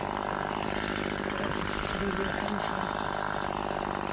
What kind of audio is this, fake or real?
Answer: real